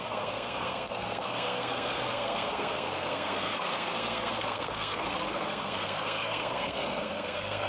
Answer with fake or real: fake